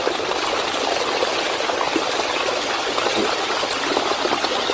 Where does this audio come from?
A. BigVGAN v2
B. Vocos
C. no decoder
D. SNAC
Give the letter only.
C